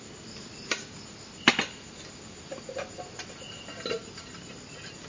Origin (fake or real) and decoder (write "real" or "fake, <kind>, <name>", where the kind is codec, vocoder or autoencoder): real